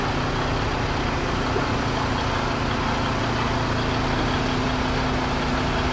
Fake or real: real